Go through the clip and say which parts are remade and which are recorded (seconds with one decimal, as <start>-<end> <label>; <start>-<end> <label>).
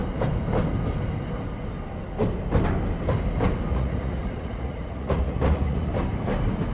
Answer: 0.0-3.7 recorded; 3.7-5.9 remade; 5.9-6.7 recorded